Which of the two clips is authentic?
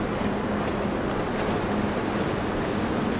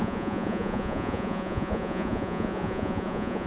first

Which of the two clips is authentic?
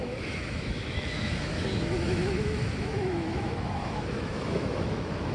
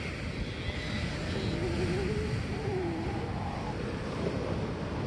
second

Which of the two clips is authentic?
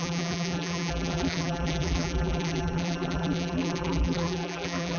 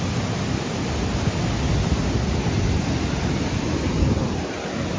second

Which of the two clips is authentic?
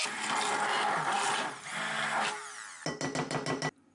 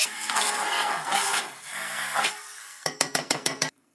first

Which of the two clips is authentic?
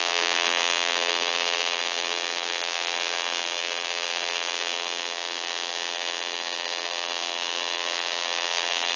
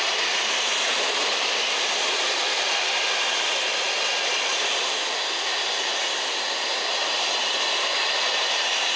second